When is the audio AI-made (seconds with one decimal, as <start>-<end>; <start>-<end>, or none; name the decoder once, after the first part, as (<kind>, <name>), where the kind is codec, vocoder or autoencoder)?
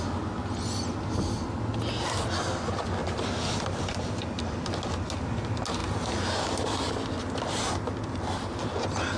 3.0-4.4 (vocoder, BigVGAN v2)